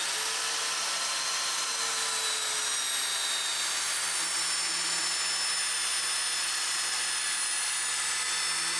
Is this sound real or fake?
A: real